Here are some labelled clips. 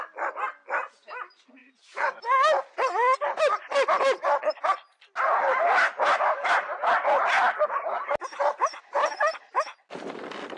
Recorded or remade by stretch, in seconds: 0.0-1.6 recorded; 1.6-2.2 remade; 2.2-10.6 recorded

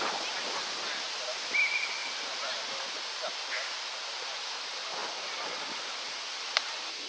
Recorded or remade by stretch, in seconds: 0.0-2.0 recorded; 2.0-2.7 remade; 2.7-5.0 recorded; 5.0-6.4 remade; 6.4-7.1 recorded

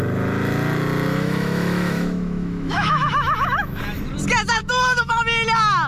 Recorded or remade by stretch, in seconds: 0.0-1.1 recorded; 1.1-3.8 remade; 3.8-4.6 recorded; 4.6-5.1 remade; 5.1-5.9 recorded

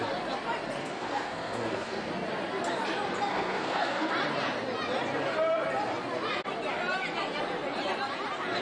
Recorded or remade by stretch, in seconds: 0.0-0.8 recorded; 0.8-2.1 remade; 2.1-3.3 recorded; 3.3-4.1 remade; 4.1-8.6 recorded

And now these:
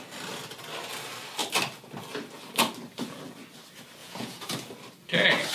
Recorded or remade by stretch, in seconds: 0.0-4.0 recorded; 4.0-4.5 remade; 4.5-5.5 recorded